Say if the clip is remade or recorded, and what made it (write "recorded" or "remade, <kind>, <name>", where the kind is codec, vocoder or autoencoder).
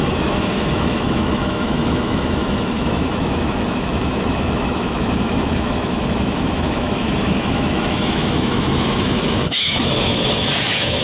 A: remade, autoencoder, DAC-VAE